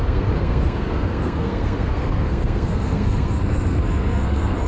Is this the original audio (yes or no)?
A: no